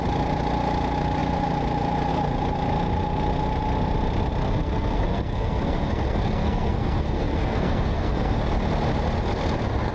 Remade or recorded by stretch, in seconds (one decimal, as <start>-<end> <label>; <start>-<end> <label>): 0.0-4.4 recorded; 4.4-8.4 remade; 8.4-9.9 recorded